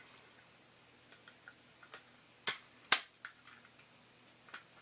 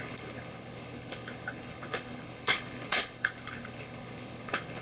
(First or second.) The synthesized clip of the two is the second